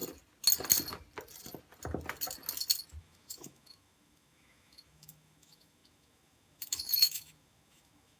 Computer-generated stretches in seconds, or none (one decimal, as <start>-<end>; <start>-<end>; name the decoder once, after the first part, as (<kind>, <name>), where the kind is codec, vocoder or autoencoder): 3.0-8.2 (autoencoder, DAC-VAE)